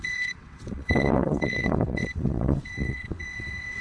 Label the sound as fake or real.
fake